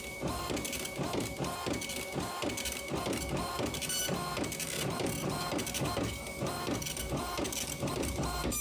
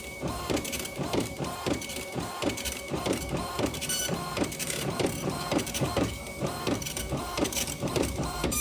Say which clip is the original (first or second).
first